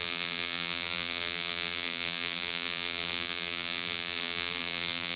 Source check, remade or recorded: remade